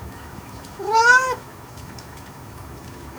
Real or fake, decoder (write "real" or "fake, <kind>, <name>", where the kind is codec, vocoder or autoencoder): fake, autoencoder, DAC-VAE